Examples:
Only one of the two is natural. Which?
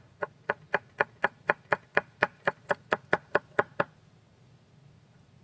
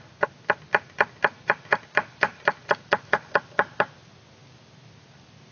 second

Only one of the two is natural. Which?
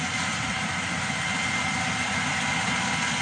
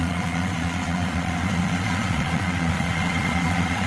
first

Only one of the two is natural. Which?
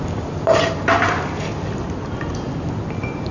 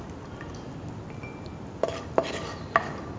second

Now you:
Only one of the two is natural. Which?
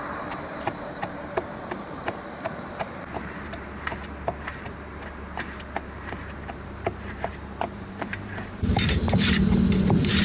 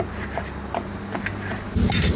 second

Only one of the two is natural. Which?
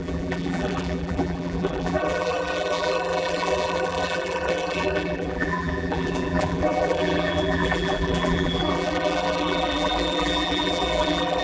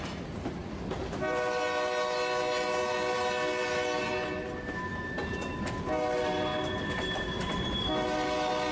second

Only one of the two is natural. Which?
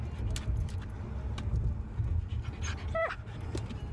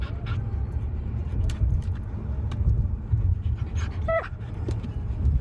first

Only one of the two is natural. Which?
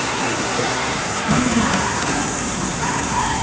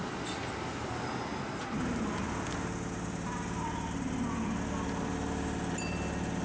second